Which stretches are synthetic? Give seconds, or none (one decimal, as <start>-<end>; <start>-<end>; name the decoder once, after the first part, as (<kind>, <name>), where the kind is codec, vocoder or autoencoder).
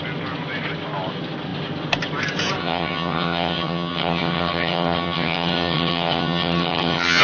2.6-7.2 (vocoder, HiFi-GAN)